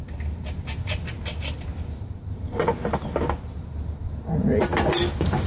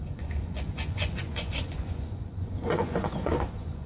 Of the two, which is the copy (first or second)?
second